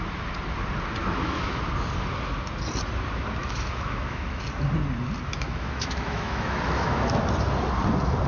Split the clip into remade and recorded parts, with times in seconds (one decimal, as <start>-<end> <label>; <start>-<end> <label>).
0.0-1.0 recorded; 1.0-1.6 remade; 1.6-3.4 recorded; 3.4-4.4 remade; 4.4-5.3 recorded; 5.3-7.2 remade; 7.2-8.3 recorded